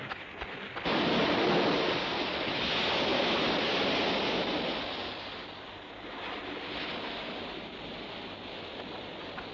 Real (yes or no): yes